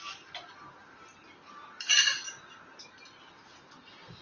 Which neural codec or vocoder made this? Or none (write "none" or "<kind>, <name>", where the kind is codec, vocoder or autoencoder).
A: none